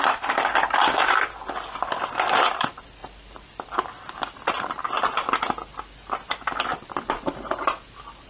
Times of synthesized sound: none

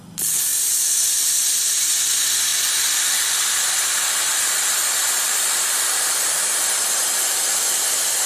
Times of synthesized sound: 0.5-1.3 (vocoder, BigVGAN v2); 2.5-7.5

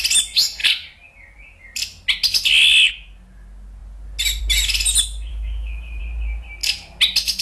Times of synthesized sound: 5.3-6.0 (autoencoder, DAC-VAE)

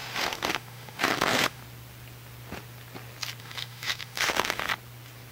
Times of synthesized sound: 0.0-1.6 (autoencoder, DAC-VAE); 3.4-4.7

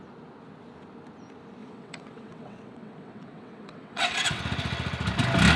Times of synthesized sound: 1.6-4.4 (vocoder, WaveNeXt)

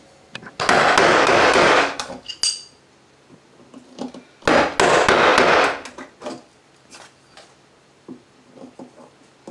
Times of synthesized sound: 1.0-2.3 (codec, DAC)

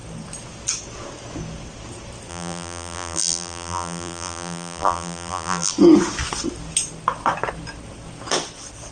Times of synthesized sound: 2.3-5.7 (vocoder, BigVGAN v2)